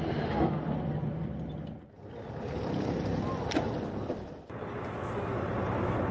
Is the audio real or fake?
real